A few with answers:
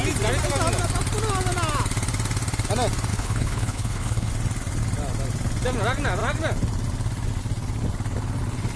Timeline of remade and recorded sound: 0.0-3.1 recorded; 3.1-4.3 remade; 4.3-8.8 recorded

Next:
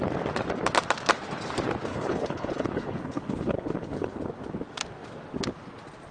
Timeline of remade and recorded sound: 0.0-1.9 recorded; 1.9-4.2 remade; 4.2-6.1 recorded

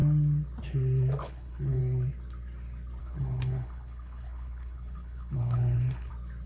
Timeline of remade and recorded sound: 0.0-1.2 recorded; 1.2-1.8 remade; 1.8-3.0 recorded; 3.0-6.1 remade; 6.1-6.5 recorded